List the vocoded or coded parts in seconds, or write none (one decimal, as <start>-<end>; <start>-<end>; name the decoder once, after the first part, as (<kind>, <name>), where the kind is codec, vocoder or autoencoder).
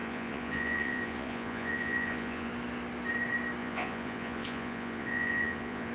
0.0-2.5 (vocoder, Vocos); 3.6-5.9